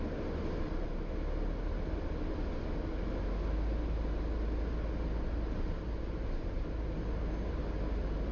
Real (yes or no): yes